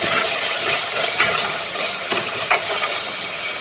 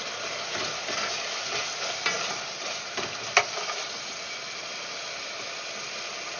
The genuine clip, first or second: second